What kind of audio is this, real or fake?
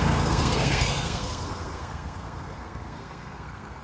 fake